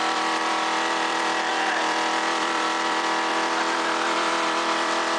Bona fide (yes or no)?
no